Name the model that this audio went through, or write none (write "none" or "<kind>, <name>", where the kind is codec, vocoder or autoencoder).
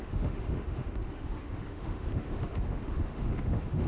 autoencoder, DAC-VAE